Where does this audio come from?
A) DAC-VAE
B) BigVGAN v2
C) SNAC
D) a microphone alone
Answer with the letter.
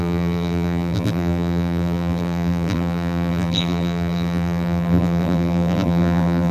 B